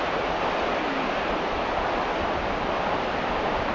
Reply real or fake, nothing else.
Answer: real